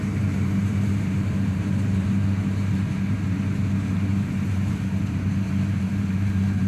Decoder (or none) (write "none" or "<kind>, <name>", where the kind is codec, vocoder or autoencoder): vocoder, BigVGAN v2